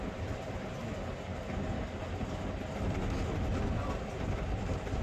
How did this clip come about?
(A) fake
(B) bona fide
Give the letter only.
B